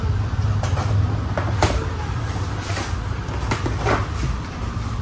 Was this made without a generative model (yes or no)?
no